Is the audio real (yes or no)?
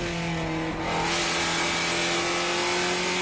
yes